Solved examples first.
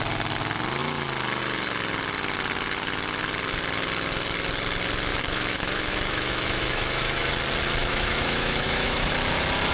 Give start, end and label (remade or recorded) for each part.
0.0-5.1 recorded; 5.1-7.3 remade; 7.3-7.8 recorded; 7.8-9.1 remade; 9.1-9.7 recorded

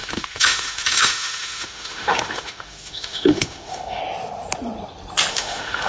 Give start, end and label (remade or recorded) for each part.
0.0-4.0 remade; 4.0-5.3 recorded; 5.3-5.9 remade